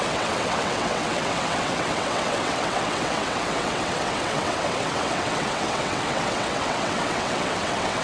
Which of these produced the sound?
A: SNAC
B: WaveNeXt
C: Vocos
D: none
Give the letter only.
B